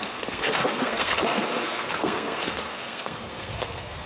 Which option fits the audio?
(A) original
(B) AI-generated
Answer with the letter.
B